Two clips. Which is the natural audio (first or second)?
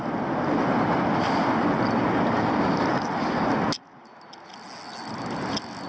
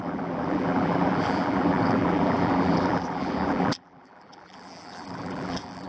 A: first